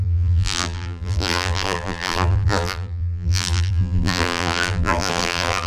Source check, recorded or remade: remade